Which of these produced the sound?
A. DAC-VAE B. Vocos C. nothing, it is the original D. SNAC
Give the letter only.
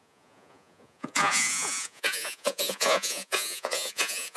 B